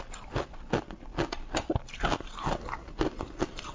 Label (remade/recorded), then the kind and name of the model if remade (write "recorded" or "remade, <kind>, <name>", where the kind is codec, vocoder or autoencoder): recorded